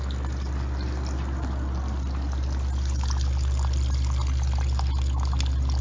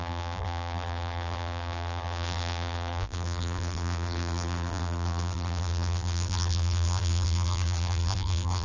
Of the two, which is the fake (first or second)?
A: second